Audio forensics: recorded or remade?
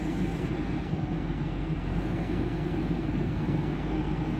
remade